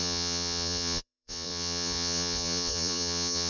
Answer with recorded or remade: remade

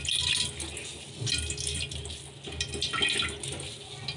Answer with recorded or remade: recorded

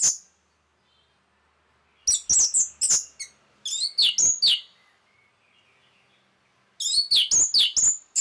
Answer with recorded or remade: recorded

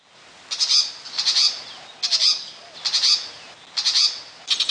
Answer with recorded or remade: recorded